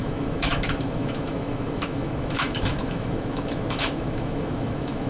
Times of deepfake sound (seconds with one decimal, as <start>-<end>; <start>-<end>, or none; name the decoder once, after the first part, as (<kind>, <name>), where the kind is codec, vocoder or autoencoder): 0.0-5.1 (autoencoder, DAC-VAE)